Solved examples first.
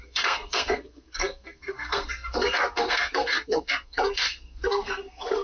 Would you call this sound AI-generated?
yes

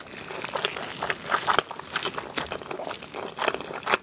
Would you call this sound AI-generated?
no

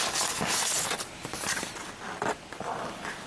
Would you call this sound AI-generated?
no